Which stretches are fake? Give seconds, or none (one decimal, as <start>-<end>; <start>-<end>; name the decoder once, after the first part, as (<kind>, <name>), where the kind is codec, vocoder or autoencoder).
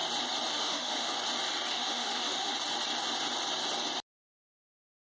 0.5-1.1 (autoencoder, DAC-VAE); 1.7-2.5; 4.3-5.2